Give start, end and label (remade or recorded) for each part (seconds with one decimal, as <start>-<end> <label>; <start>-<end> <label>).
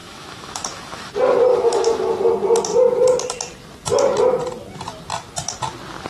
0.0-1.1 remade; 1.1-1.5 recorded; 1.5-2.1 remade; 2.1-6.1 recorded